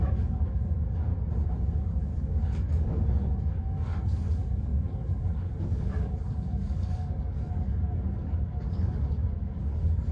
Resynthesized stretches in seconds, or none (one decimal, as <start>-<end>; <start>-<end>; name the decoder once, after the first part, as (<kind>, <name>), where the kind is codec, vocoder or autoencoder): 0.0-1.1 (codec, DAC); 1.8-10.1